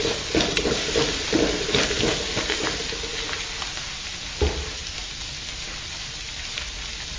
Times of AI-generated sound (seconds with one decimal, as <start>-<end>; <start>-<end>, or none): none